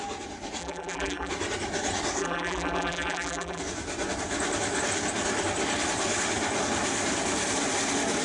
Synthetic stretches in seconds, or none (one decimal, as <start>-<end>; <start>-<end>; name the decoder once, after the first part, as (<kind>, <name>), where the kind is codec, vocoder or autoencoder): 0.6-1.3 (vocoder, BigVGAN v2); 2.2-3.6